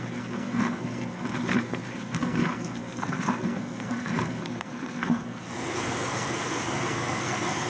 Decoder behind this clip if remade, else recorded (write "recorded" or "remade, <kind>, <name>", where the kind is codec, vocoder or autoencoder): remade, codec, SNAC